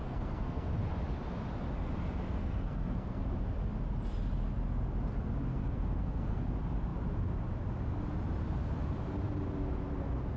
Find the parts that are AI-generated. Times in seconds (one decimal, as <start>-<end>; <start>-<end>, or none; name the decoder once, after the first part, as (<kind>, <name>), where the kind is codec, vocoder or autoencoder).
0.0-0.7 (codec, SNAC); 2.4-3.3; 5.5-6.4